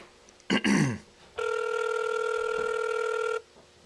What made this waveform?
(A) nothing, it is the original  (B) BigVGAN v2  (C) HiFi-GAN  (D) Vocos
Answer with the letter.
A